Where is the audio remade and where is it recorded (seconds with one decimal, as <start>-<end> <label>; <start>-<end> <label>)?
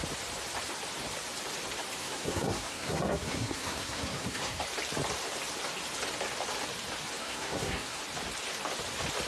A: 0.0-2.0 recorded; 2.0-4.6 remade; 4.6-7.2 recorded; 7.2-8.0 remade; 8.0-9.3 recorded